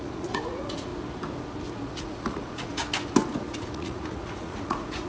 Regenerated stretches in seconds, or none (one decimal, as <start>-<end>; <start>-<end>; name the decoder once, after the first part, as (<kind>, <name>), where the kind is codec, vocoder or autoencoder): 0.0-0.9 (vocoder, Vocos); 1.7-2.8; 3.5-5.1